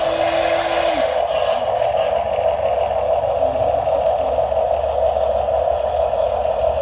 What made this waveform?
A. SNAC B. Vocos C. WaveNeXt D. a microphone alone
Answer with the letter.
D